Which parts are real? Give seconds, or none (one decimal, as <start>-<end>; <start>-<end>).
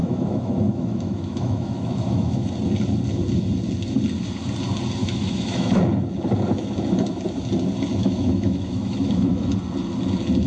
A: 2.5-5.0; 5.8-8.0; 9.5-10.5